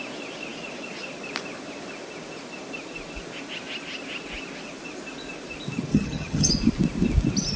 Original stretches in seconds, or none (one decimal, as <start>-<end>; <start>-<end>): 0.0-5.9; 6.5-7.6

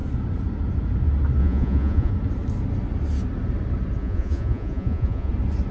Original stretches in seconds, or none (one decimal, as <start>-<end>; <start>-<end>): 0.0-1.4; 2.1-4.0; 5.3-5.7

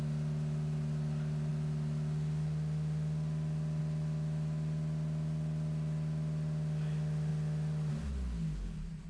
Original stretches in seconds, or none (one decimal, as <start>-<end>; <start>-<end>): 0.0-9.1